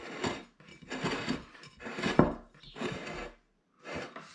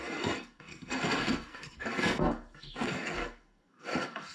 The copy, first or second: second